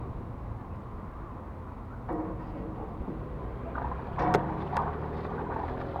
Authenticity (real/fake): real